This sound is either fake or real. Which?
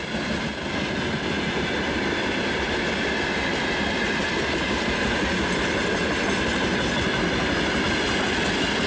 real